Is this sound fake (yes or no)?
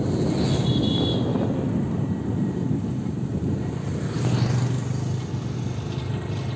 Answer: no